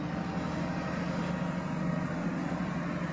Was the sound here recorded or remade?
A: recorded